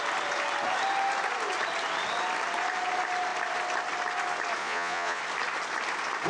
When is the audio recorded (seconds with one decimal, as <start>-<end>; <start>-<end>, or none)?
0.0-4.6; 5.2-6.3